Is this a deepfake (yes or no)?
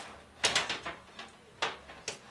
no